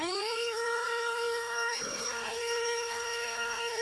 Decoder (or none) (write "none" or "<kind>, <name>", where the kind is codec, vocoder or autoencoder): codec, SNAC